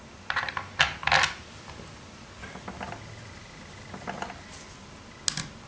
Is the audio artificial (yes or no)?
no